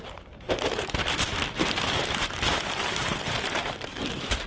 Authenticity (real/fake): fake